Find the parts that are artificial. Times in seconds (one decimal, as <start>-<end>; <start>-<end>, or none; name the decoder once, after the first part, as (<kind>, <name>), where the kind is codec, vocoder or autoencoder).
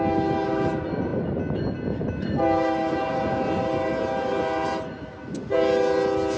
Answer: none